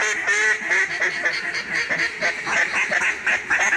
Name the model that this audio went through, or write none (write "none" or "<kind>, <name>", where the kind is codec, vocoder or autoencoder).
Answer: none